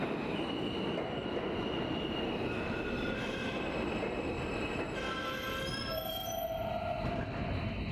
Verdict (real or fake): real